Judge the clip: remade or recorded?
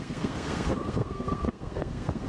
remade